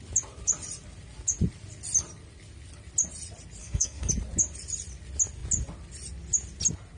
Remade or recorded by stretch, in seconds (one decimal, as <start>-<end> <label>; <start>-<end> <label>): 0.0-3.6 recorded; 3.6-4.1 remade; 4.1-7.0 recorded